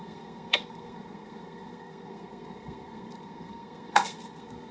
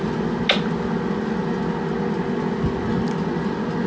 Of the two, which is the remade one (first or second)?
first